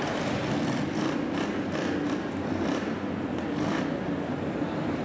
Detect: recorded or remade recorded